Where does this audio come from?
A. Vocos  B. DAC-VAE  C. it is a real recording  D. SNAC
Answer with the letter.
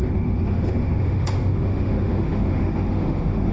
B